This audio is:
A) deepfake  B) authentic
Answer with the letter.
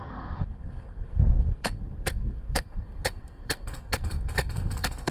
A